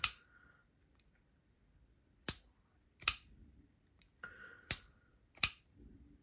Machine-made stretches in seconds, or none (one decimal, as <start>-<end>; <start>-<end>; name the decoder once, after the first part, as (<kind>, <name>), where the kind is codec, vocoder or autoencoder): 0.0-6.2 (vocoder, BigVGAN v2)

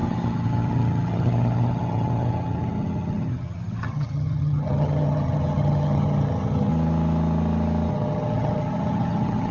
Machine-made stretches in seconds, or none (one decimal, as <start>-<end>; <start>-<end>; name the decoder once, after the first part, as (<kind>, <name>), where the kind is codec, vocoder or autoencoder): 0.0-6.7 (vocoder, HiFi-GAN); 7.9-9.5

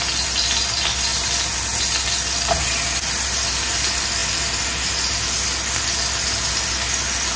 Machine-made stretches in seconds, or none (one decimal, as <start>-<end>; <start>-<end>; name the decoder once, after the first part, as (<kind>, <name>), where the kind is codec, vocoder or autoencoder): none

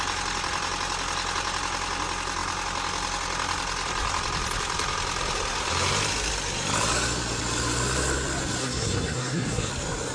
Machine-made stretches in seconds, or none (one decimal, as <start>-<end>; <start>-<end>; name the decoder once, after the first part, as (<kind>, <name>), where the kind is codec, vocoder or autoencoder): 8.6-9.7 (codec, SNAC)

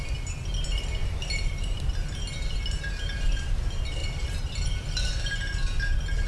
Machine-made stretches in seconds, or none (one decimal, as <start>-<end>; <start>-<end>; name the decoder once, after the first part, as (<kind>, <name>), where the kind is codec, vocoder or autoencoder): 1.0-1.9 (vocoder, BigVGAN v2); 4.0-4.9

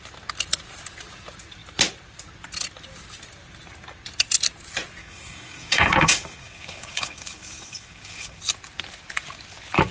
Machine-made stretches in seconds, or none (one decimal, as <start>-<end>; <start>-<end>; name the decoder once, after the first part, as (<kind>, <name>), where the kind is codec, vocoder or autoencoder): 5.0-8.4 (codec, DAC)

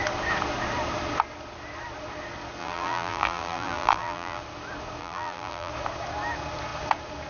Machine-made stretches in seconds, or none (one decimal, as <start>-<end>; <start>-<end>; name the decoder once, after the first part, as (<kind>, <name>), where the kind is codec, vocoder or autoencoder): 2.6-4.4 (vocoder, BigVGAN v2); 5.0-5.7

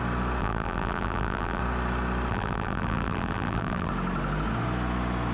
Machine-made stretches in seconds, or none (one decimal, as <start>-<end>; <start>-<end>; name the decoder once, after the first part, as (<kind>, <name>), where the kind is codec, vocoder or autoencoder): 0.4-1.6 (vocoder, BigVGAN v2); 2.3-3.9